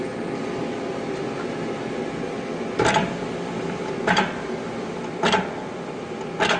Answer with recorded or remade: recorded